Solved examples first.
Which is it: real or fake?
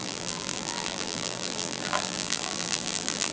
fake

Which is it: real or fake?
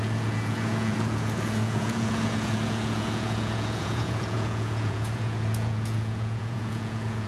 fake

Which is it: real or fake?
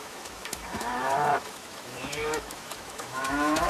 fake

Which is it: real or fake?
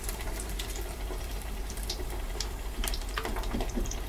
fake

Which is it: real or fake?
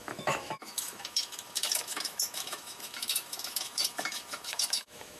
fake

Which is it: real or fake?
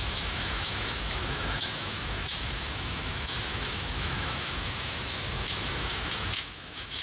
fake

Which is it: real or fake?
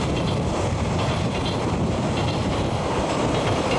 fake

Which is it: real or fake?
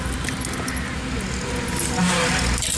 real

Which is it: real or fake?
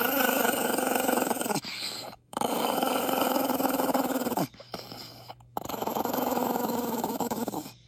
fake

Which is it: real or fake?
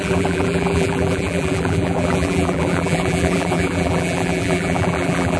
fake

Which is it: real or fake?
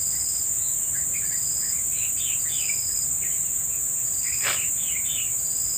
real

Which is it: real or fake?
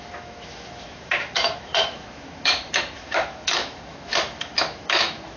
fake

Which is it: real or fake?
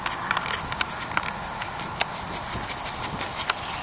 real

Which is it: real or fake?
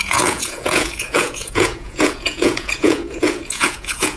fake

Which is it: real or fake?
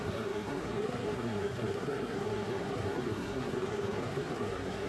fake